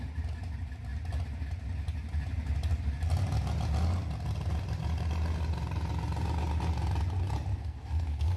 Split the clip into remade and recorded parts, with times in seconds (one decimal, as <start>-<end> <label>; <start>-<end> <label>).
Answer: 0.0-7.5 recorded; 7.5-8.4 remade